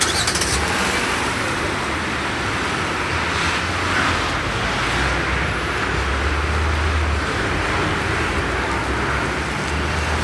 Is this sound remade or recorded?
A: recorded